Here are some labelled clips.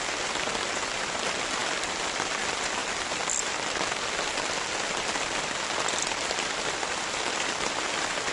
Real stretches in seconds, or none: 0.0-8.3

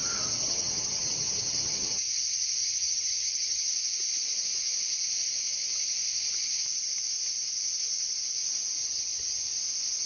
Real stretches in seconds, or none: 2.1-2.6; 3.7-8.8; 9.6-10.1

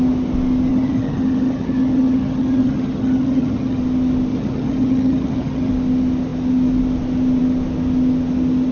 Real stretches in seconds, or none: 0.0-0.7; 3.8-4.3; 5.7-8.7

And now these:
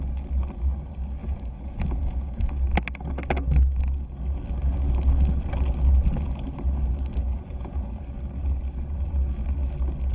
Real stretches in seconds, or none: 0.0-1.2; 2.5-7.1; 8.0-10.1

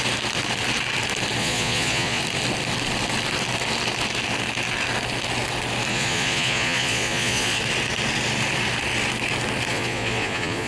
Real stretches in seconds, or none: 0.0-1.4; 2.2-5.9; 7.6-9.7